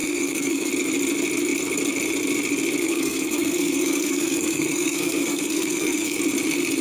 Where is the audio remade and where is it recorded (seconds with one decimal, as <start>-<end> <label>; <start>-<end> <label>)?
0.0-0.7 remade; 0.7-2.8 recorded; 2.8-6.2 remade; 6.2-6.8 recorded